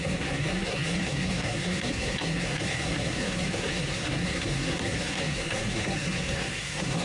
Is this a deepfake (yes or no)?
yes